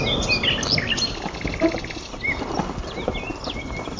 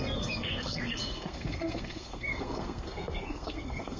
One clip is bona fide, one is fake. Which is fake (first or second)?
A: second